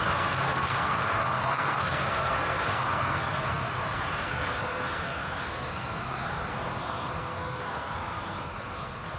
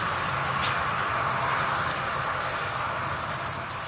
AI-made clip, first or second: first